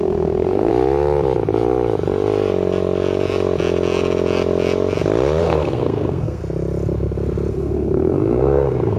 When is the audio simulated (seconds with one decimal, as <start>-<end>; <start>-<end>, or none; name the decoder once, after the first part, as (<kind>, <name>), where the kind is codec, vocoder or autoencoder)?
0.0-0.7 (codec, SNAC); 5.4-6.4; 7.5-9.0